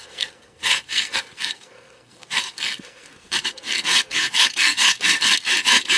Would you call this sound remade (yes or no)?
yes